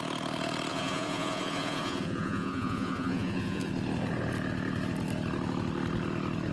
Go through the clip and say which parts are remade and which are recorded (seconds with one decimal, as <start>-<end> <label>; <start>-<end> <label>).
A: 0.0-0.7 recorded; 0.7-3.7 remade; 3.7-6.5 recorded